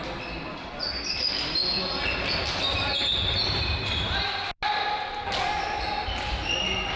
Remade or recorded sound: recorded